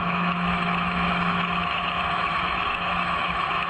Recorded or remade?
remade